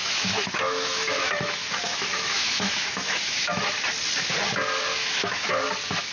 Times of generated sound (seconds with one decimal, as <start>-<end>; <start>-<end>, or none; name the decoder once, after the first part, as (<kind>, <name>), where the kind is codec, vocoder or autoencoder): 0.0-3.6 (autoencoder, DAC-VAE); 4.9-5.5